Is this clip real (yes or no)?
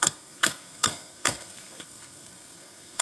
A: no